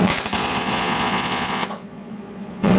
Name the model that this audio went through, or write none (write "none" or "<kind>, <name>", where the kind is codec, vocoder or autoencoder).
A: vocoder, Vocos